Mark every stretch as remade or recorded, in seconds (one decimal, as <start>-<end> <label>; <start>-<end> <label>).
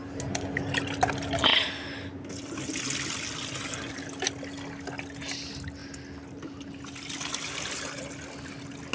0.0-8.9 recorded